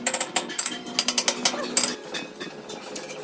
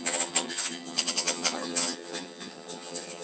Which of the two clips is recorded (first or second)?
first